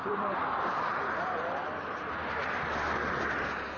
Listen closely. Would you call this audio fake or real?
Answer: fake